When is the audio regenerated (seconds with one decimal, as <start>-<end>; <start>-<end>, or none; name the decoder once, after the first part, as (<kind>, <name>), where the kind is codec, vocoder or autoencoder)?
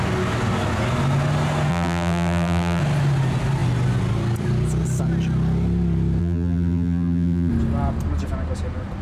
1.7-2.8 (vocoder, BigVGAN v2); 6.2-7.5